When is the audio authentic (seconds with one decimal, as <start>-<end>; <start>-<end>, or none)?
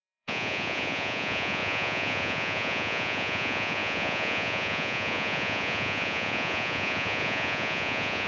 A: none